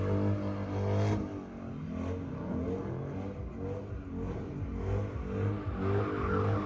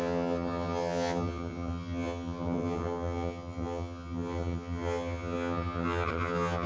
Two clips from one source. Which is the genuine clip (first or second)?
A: first